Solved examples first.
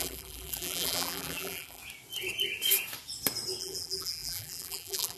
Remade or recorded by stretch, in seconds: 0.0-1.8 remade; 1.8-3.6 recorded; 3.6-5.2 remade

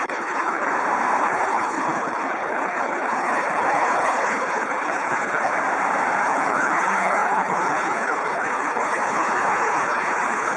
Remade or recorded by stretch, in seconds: 0.0-0.7 remade; 0.7-1.2 recorded; 1.2-5.5 remade; 5.5-6.2 recorded; 6.2-10.6 remade